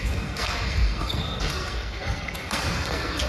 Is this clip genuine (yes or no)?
no